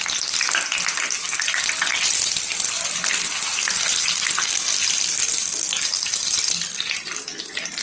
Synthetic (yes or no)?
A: no